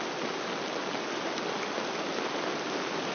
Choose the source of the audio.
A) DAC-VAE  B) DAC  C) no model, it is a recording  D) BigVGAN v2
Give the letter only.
C